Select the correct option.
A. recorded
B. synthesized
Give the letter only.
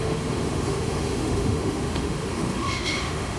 B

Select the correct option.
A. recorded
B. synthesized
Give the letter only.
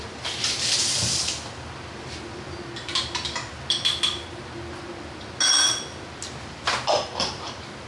A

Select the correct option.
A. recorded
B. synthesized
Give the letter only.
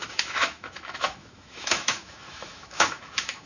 B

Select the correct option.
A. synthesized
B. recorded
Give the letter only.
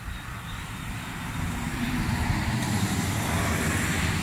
B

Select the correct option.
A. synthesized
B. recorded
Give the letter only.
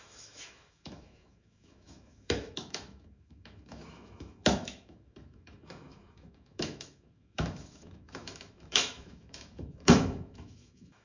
A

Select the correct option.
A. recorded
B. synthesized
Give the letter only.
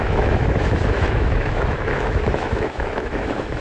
B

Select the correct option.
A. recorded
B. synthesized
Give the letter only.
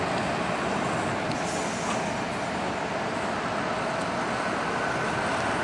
A